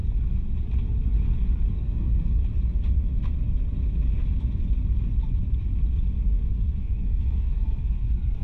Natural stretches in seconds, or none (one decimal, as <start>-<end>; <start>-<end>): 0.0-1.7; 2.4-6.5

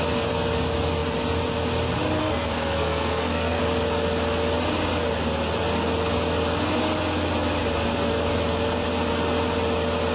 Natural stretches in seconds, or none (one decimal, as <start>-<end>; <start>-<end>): 0.0-2.2; 3.6-10.1

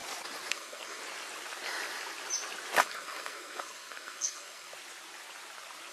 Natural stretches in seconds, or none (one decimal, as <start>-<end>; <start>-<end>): 0.0-0.5; 1.0-2.8; 4.7-5.9

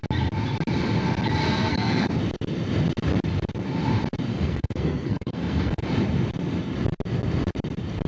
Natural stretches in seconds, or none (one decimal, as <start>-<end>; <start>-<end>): 0.0-1.4; 2.1-4.3; 5.8-8.1

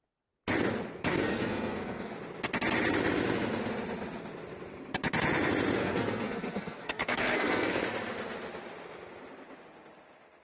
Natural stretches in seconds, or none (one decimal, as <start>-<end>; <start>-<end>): 0.0-1.1; 2.1-5.8; 7.8-10.4

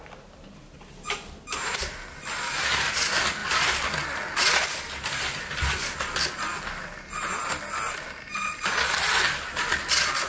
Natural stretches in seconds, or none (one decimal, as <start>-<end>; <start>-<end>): 0.0-10.3

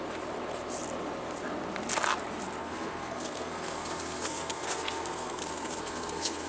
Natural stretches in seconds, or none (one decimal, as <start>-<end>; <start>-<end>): 0.0-2.6